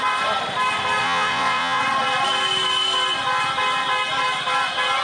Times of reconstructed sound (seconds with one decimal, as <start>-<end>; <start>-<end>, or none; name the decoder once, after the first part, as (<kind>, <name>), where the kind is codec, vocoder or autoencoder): 1.0-1.8 (vocoder, Vocos)